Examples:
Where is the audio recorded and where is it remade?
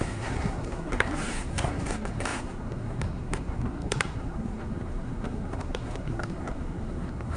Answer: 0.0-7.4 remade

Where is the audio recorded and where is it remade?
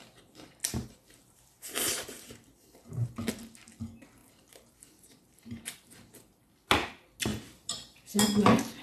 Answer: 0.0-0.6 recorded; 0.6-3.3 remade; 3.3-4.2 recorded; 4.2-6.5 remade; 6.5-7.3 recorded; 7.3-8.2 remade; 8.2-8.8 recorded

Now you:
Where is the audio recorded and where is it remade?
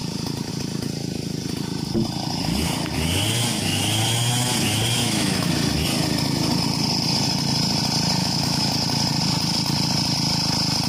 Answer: 0.0-5.0 recorded; 5.0-5.5 remade; 5.5-8.2 recorded; 8.2-8.7 remade; 8.7-10.9 recorded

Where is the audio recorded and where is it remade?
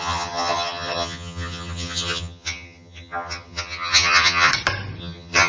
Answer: 0.0-4.5 remade; 4.5-5.0 recorded; 5.0-5.5 remade